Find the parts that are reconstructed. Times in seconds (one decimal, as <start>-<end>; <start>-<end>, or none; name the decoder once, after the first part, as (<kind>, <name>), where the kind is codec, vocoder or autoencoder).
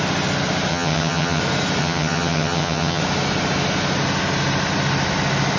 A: 0.7-1.4 (vocoder, HiFi-GAN); 1.8-3.0